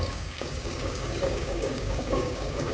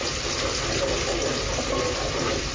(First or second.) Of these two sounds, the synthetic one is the first